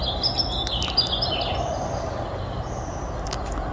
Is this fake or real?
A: real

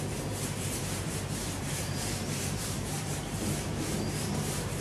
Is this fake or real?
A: fake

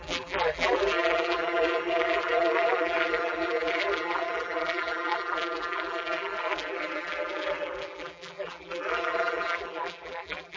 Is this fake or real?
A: fake